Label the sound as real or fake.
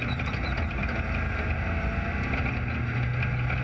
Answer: real